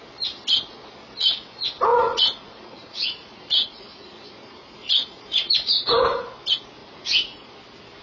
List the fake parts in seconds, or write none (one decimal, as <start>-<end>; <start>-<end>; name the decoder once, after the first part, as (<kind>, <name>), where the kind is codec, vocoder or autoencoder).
1.9-5.5 (vocoder, Vocos); 6.8-7.5